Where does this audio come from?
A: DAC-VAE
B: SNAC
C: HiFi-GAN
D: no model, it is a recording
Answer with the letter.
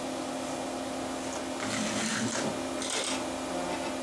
D